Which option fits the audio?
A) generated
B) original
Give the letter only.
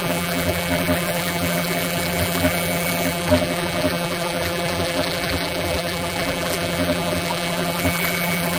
A